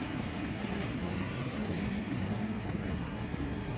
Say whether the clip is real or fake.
fake